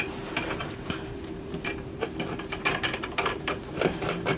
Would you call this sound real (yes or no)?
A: no